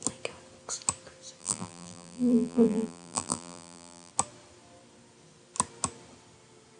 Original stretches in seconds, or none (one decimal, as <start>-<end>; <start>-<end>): 0.0-1.4; 4.1-6.8